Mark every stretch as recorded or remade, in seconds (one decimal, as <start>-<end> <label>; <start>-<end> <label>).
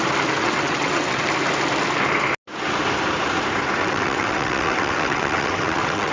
0.0-0.4 recorded; 0.4-1.3 remade; 1.3-3.8 recorded; 3.8-6.1 remade